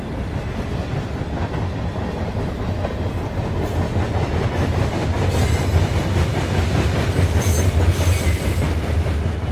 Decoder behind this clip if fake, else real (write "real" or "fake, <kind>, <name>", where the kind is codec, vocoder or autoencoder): real